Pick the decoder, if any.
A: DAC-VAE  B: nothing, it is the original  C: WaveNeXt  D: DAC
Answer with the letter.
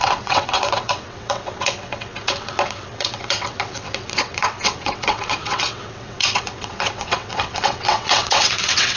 C